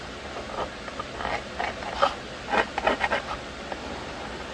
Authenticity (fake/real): real